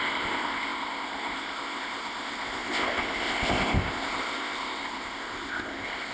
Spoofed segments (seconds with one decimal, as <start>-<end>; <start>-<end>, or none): 0.0-6.1